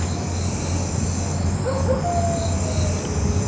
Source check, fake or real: real